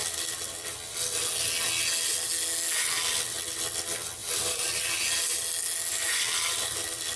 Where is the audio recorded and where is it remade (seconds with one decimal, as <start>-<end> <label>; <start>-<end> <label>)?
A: 0.0-4.2 recorded; 4.2-4.9 remade; 4.9-5.9 recorded; 5.9-6.7 remade; 6.7-7.2 recorded